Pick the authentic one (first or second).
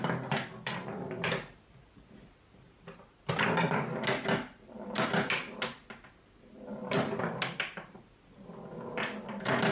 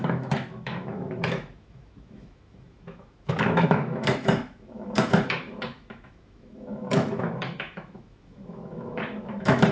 first